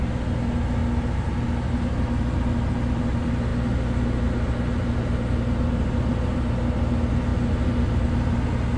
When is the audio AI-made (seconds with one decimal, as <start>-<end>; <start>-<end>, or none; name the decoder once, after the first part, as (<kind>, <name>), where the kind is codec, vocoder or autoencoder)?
none

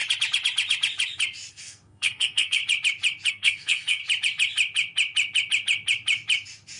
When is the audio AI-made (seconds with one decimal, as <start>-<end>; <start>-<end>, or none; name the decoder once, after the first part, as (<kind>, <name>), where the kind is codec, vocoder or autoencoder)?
1.5-2.6 (codec, SNAC); 3.3-4.0